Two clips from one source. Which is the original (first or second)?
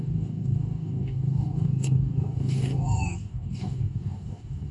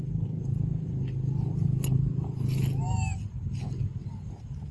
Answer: second